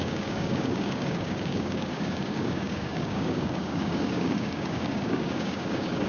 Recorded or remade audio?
remade